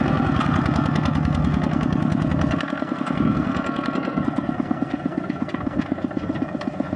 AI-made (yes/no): yes